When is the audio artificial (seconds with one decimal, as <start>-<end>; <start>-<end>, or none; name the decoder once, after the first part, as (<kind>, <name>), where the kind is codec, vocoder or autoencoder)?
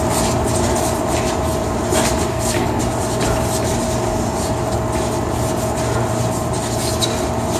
2.3-2.8 (codec, SNAC)